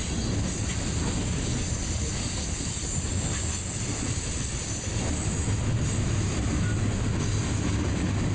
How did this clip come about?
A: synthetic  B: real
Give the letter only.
B